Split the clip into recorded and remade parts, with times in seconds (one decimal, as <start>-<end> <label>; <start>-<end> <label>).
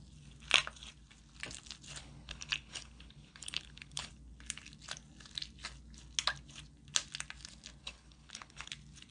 0.0-2.0 recorded; 2.0-4.1 remade; 4.1-7.8 recorded; 7.8-8.7 remade; 8.7-9.1 recorded